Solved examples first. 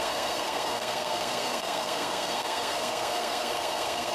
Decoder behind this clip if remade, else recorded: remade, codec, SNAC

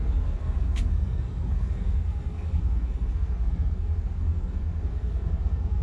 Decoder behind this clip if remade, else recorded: remade, codec, SNAC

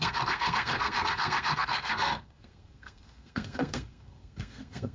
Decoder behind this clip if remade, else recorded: remade, codec, SNAC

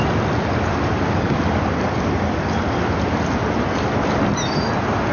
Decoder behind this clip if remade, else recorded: recorded